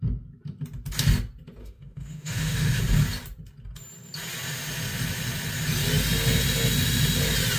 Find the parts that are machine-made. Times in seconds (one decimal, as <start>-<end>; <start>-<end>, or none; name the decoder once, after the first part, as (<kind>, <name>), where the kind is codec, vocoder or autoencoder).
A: 1.6-2.8 (autoencoder, DAC-VAE)